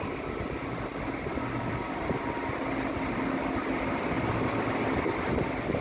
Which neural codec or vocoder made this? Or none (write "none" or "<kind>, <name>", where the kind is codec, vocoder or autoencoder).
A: none